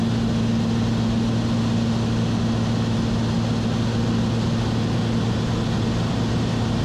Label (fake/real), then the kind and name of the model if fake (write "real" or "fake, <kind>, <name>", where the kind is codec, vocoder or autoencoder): real